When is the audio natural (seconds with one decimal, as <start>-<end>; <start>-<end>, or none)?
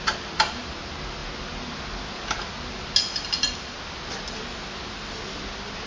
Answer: 0.0-5.9